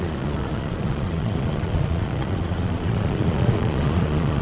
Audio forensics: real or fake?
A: fake